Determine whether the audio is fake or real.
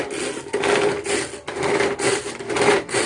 real